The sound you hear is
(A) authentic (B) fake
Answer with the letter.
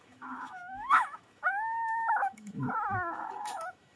B